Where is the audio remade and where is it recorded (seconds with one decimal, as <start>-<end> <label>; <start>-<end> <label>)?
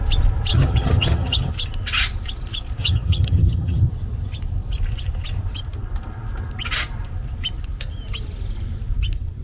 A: 0.0-0.5 recorded; 0.5-1.5 remade; 1.5-2.8 recorded; 2.8-3.9 remade; 3.9-9.4 recorded